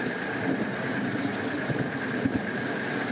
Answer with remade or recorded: recorded